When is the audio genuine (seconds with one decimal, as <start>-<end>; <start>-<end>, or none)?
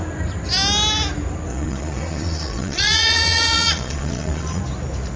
0.0-1.5; 4.6-5.2